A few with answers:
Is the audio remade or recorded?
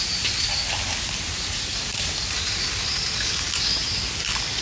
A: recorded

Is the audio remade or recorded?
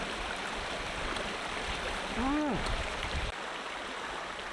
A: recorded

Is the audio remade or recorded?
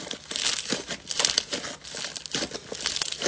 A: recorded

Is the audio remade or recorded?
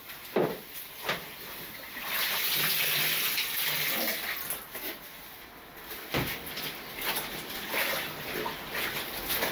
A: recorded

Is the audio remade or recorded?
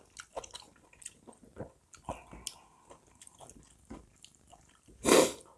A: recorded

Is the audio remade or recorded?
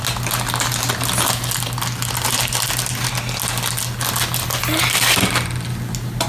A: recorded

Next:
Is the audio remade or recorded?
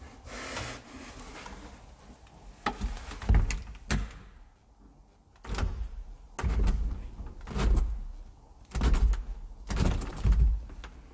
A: recorded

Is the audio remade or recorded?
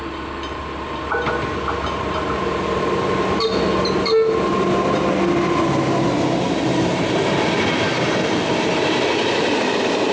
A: recorded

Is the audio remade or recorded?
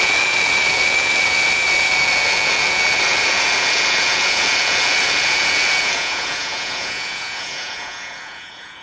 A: remade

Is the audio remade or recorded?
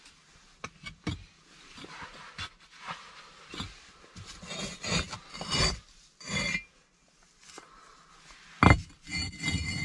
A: recorded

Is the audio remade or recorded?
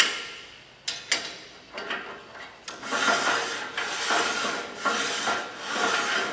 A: recorded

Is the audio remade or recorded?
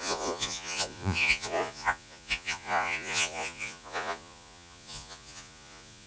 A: remade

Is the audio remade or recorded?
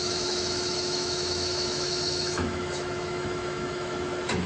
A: remade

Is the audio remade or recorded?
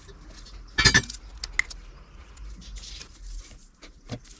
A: recorded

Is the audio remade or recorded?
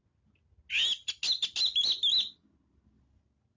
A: recorded